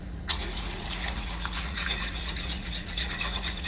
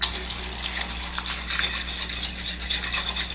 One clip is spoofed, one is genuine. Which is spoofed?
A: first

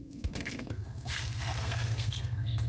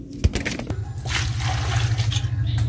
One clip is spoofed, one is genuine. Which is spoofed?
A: first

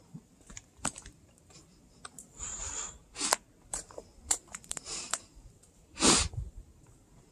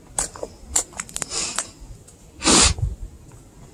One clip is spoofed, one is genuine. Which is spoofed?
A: first